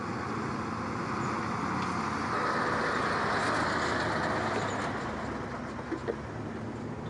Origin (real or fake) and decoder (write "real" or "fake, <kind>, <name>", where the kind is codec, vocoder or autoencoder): real